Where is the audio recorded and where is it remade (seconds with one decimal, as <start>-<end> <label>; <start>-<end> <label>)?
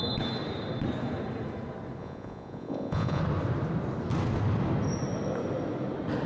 0.0-2.0 recorded; 2.0-3.2 remade; 3.2-6.3 recorded